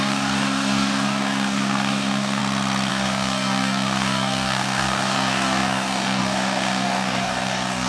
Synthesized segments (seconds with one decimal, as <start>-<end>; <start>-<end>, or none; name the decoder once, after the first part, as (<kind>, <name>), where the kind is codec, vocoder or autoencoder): 0.0-2.4 (codec, DAC); 2.9-7.9

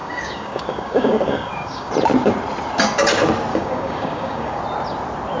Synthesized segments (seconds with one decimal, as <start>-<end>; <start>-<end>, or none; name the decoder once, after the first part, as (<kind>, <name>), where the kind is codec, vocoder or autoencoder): 0.0-1.9 (codec, DAC); 3.5-4.6

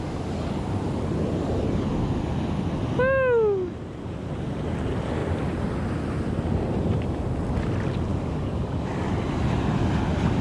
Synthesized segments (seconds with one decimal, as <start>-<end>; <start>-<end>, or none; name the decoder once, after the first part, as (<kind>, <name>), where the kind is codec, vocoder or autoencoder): 8.1-9.1 (codec, DAC)

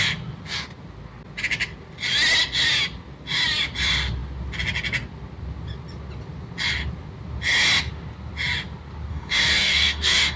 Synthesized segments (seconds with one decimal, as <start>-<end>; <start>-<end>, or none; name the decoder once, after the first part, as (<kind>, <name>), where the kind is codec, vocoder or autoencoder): 9.1-10.4 (codec, DAC)

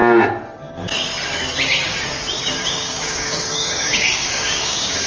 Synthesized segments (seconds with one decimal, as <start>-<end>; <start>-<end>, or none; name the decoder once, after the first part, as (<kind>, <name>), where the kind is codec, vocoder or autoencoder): 2.5-5.1 (codec, DAC)

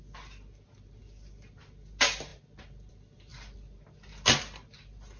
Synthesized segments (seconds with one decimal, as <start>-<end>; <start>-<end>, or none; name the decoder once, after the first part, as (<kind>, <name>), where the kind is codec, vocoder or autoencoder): none

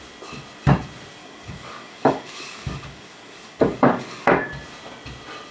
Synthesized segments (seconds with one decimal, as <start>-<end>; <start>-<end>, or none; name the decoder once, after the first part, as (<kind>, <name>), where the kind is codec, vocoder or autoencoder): 1.2-4.5 (codec, DAC)

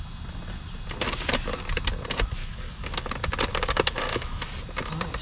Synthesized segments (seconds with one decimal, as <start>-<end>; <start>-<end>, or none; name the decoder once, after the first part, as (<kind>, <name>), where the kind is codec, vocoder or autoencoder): 2.4-3.1 (codec, DAC); 3.5-4.5